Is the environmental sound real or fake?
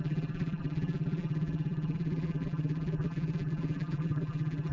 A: fake